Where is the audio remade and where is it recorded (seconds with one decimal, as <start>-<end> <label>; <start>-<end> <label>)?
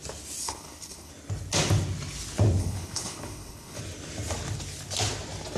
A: 0.0-0.4 recorded; 0.4-1.1 remade; 1.1-2.6 recorded; 2.6-3.8 remade; 3.8-5.6 recorded